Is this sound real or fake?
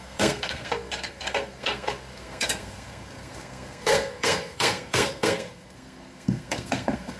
fake